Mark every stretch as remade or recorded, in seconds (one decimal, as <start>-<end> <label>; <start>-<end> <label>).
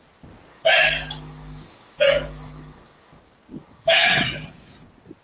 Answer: 0.0-0.5 recorded; 0.5-3.2 remade; 3.2-3.6 recorded; 3.6-4.2 remade; 4.2-5.2 recorded